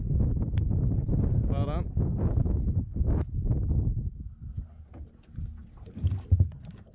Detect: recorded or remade recorded